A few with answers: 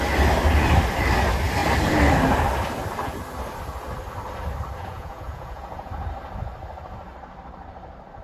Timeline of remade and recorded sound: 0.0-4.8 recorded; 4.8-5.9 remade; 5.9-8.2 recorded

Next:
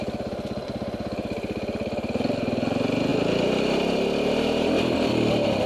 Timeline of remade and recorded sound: 0.0-5.7 recorded